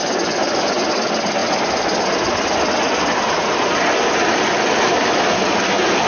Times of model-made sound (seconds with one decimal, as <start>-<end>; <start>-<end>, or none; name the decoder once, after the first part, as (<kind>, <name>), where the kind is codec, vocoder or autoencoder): 0.0-0.9 (vocoder, Vocos)